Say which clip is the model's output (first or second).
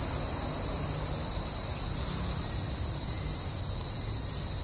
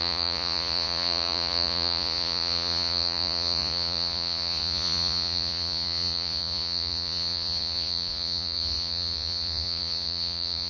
second